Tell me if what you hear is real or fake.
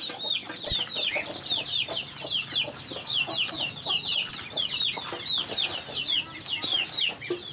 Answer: real